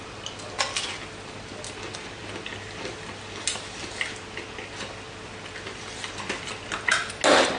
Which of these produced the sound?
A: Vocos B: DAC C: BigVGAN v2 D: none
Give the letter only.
D